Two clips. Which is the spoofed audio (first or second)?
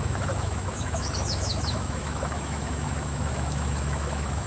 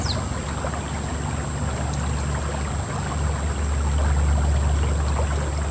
first